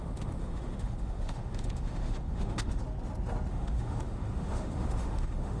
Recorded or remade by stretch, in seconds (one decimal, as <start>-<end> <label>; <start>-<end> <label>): 0.0-2.8 remade; 2.8-3.5 recorded; 3.5-5.6 remade